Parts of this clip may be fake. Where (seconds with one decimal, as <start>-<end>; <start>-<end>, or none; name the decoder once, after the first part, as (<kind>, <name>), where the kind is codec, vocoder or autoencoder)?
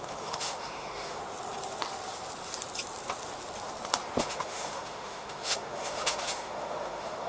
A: 0.0-1.2 (autoencoder, DAC-VAE); 4.2-7.3